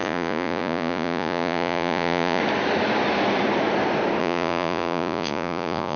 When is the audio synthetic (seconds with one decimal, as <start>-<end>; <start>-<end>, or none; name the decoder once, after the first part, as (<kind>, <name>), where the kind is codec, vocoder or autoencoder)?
0.0-2.4 (vocoder, Vocos); 4.2-6.0